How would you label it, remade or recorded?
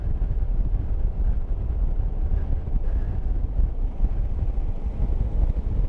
recorded